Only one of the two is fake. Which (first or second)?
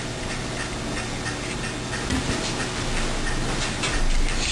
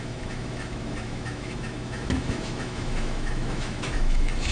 second